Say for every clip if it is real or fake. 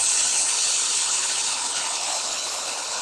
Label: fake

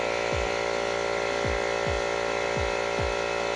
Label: real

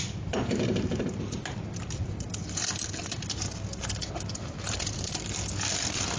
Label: real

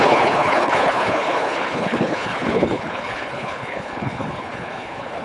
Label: fake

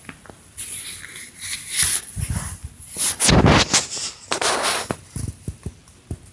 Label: real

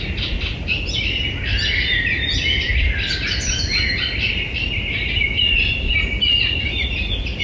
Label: real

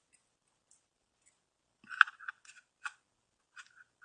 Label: real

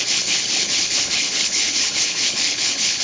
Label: fake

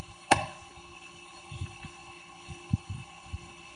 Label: fake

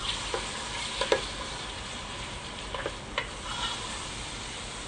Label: real